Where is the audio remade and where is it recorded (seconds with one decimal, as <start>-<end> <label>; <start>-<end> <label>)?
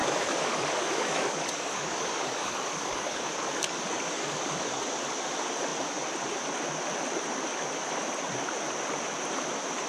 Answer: 0.0-4.8 remade; 4.8-9.9 recorded